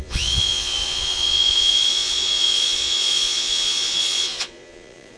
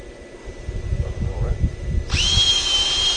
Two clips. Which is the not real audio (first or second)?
first